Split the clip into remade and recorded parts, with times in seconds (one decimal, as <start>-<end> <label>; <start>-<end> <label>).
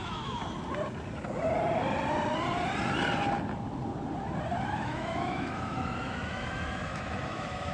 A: 0.0-0.4 remade; 0.4-4.6 recorded; 4.6-7.7 remade